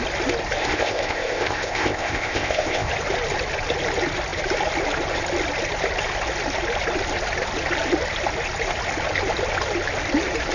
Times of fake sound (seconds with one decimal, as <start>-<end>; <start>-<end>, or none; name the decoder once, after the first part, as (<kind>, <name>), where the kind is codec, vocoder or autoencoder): 0.6-2.9 (codec, ZipCodec)